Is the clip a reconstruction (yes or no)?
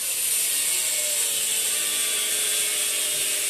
no